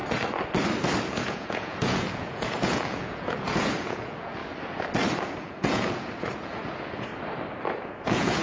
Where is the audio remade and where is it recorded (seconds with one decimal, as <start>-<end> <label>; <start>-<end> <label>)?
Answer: 0.0-1.0 recorded; 1.0-4.4 remade; 4.4-5.2 recorded; 5.2-7.1 remade; 7.1-7.7 recorded; 7.7-8.4 remade